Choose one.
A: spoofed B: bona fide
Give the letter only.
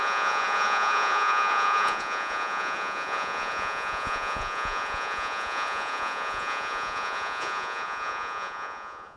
A